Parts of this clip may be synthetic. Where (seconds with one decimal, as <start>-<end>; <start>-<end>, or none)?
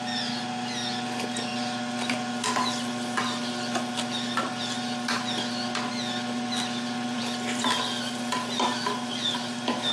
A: 0.0-9.9